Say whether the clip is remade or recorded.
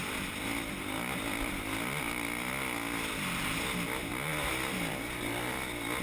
recorded